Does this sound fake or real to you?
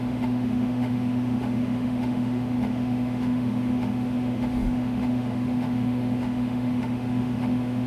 fake